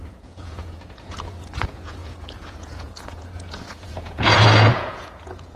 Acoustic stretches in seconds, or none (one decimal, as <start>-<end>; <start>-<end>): none